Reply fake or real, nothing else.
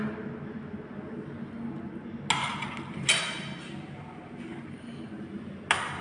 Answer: real